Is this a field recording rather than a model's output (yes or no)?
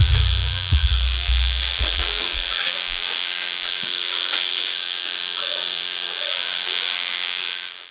no